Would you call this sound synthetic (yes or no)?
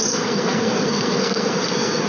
yes